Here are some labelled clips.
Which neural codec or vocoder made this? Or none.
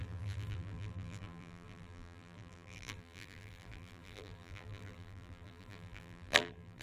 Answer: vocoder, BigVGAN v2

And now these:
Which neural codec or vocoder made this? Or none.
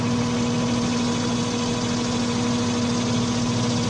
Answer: none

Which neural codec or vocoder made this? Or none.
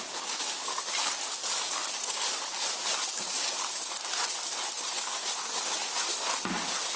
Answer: none